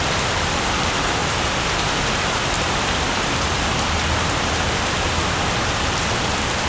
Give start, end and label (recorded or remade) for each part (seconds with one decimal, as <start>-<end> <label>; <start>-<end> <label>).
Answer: 0.0-6.7 recorded